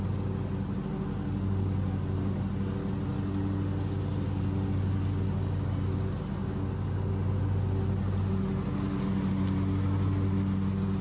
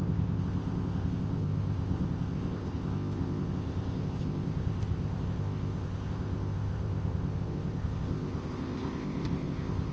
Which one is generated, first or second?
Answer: second